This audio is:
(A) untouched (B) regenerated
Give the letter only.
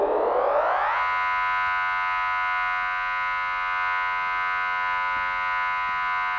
A